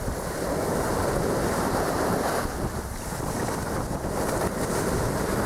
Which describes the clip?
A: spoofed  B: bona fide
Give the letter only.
B